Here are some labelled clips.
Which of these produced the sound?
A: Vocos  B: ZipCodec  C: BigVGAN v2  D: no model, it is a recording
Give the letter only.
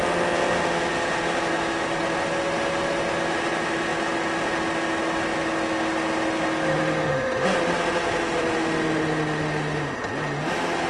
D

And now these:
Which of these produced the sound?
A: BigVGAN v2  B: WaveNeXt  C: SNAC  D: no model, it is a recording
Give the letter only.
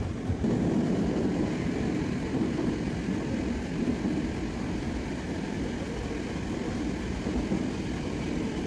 A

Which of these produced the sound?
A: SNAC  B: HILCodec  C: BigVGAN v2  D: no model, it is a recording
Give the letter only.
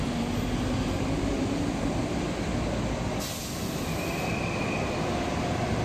C